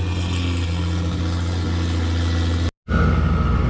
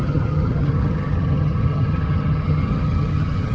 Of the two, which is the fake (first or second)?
second